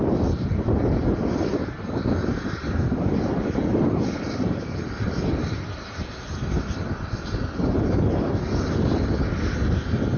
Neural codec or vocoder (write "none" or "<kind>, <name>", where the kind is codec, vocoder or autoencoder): none